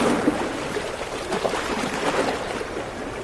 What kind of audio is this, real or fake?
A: real